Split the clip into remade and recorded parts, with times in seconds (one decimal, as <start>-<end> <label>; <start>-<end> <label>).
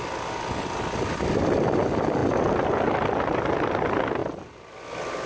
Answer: 0.0-5.3 recorded